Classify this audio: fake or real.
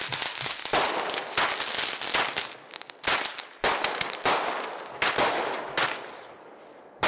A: real